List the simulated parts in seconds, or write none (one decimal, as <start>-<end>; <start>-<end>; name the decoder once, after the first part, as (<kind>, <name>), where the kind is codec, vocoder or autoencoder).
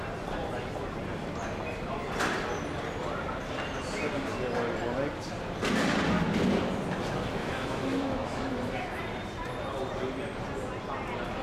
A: 7.4-9.0 (autoencoder, DAC-VAE)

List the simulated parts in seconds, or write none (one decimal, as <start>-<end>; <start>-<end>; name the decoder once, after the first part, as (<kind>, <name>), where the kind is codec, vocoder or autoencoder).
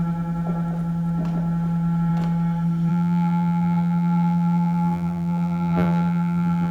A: 2.9-6.7 (vocoder, BigVGAN v2)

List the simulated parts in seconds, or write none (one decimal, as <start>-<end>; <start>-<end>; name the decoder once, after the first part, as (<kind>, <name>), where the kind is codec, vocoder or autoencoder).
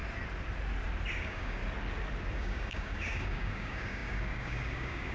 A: 1.2-1.6 (codec, DAC); 2.3-5.1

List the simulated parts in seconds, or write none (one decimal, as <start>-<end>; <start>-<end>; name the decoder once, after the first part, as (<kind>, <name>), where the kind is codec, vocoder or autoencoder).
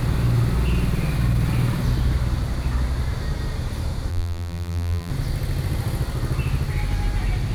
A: 4.1-5.1 (vocoder, BigVGAN v2)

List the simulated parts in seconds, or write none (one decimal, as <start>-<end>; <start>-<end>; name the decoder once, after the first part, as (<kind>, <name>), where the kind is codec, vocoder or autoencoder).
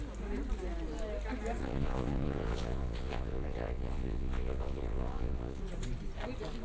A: 1.6-5.6 (vocoder, Vocos)